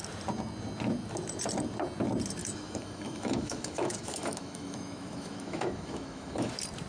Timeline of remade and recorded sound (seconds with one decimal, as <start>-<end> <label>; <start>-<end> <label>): 0.0-2.4 recorded; 2.4-6.5 remade; 6.5-6.9 recorded